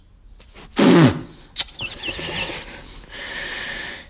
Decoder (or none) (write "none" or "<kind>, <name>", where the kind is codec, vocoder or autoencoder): none